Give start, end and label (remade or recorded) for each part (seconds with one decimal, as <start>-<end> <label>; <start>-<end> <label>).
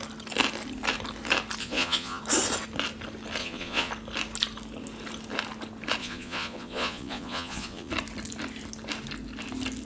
0.0-1.6 recorded; 1.6-2.2 remade; 2.2-3.4 recorded; 3.4-3.9 remade; 3.9-6.0 recorded; 6.0-7.9 remade; 7.9-9.9 recorded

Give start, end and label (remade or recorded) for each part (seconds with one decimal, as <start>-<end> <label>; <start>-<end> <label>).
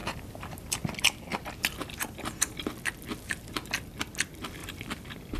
0.0-5.4 recorded